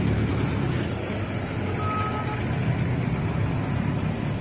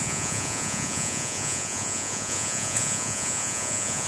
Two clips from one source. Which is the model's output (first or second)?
second